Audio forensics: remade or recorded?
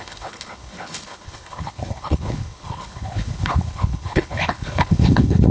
remade